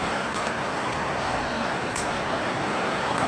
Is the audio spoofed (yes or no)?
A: yes